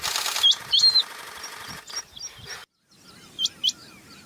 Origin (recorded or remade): recorded